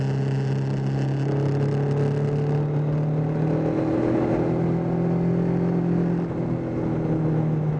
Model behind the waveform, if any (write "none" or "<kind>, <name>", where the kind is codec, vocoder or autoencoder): none